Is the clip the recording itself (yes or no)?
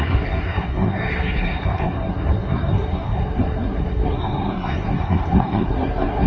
no